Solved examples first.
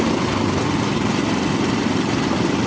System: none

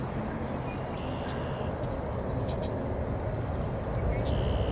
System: none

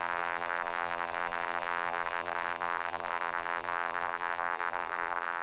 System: vocoder, BigVGAN v2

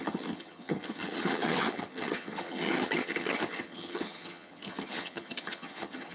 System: vocoder, HiFi-GAN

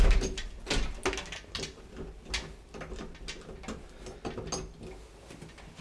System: none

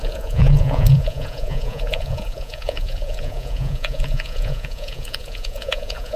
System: vocoder, Vocos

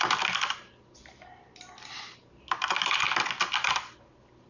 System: none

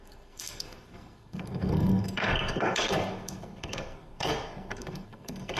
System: codec, SNAC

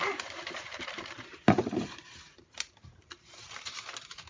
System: vocoder, BigVGAN v2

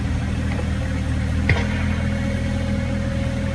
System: none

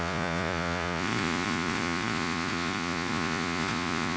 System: vocoder, Vocos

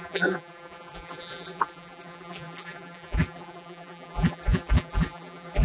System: vocoder, BigVGAN v2